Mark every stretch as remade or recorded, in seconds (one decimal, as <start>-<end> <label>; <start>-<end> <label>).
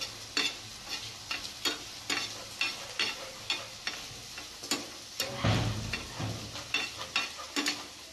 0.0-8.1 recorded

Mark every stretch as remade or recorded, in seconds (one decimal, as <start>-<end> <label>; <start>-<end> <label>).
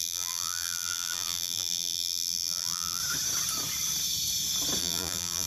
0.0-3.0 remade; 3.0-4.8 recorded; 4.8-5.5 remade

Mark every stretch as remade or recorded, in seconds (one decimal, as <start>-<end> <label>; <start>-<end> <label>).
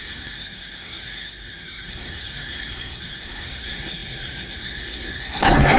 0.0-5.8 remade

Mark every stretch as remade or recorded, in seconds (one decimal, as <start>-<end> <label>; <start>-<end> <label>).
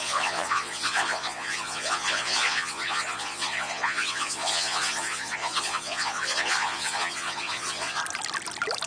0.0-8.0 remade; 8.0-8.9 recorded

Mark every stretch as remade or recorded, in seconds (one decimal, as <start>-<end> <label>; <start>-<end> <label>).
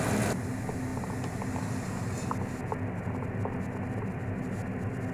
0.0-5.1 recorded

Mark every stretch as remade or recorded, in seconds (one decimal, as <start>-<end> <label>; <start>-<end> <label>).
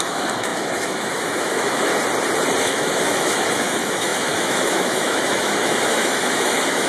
0.0-1.9 remade; 1.9-2.6 recorded; 2.6-6.9 remade